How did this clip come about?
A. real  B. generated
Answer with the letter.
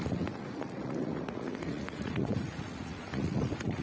B